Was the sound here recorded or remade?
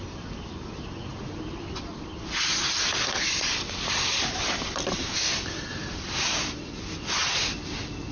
recorded